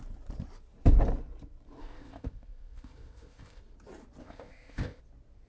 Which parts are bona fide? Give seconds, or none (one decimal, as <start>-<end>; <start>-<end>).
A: 0.0-1.8; 3.6-4.2; 5.0-5.5